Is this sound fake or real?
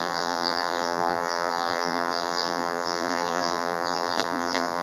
fake